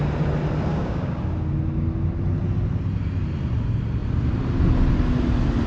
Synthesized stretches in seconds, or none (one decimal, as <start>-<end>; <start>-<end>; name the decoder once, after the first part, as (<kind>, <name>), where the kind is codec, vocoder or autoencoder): 0.7-1.2 (codec, DAC)